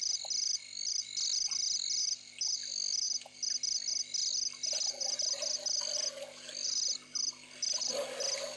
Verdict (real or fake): real